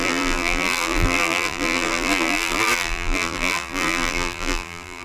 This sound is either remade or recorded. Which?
remade